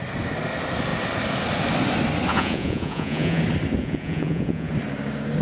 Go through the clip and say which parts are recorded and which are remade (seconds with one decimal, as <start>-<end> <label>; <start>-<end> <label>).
0.0-2.3 recorded; 2.3-3.4 remade; 3.4-3.8 recorded; 3.8-4.7 remade; 4.7-5.4 recorded

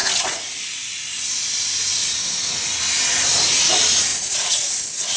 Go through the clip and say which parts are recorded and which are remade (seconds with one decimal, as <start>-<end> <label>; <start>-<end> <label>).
0.0-2.0 recorded; 2.0-2.8 remade; 2.8-4.1 recorded; 4.1-4.7 remade; 4.7-5.2 recorded

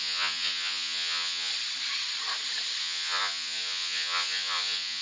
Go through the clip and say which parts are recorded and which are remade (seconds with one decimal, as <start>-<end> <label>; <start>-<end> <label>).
0.0-1.5 remade; 1.5-2.8 recorded; 2.8-5.0 remade

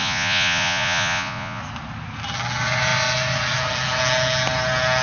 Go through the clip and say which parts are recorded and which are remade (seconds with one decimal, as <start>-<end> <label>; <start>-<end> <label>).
0.0-1.6 remade; 1.6-5.0 recorded